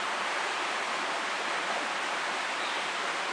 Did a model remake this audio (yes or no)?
no